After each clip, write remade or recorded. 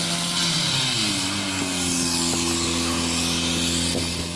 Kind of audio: recorded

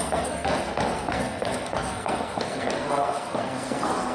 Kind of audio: remade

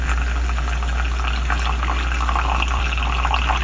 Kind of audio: recorded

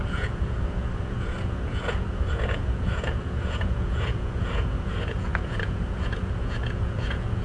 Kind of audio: remade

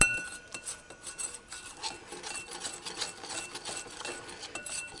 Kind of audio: recorded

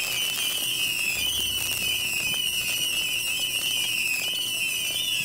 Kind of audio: recorded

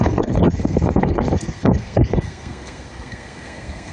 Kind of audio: remade